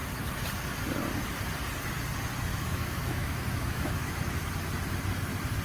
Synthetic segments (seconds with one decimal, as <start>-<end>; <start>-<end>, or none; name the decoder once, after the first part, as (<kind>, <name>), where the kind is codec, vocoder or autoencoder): 2.5-4.5 (autoencoder, DAC-VAE)